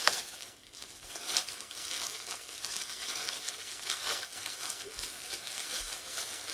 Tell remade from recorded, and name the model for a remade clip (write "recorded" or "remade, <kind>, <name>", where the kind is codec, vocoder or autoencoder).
remade, codec, SNAC